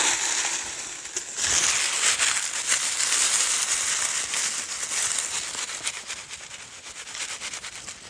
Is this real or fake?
real